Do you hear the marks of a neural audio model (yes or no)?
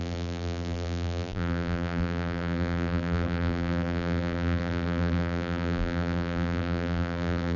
yes